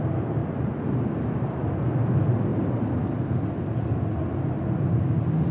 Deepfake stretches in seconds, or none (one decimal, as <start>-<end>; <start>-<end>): 0.4-1.1; 2.5-3.5